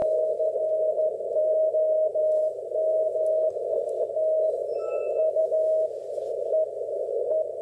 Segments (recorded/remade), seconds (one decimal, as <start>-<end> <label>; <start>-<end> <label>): 0.0-2.1 recorded; 2.1-2.7 remade; 2.7-7.6 recorded